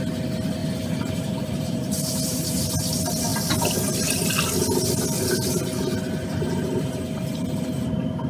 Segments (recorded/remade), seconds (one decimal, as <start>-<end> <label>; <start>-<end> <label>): 0.0-0.6 recorded; 0.6-2.7 remade; 2.7-8.3 recorded